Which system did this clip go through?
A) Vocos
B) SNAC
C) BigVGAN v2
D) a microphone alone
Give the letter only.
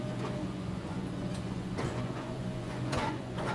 A